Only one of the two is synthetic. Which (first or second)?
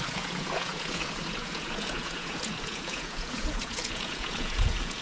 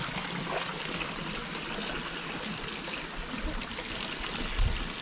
first